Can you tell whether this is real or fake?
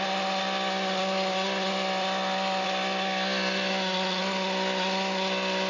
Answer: real